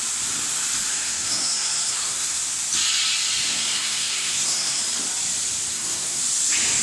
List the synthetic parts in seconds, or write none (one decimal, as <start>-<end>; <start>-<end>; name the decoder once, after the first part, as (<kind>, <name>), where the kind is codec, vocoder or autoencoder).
0.9-2.4 (codec, SNAC); 3.5-4.8; 5.7-6.2